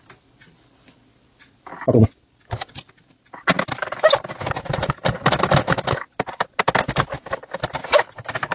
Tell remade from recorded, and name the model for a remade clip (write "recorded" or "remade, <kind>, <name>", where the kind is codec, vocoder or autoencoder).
recorded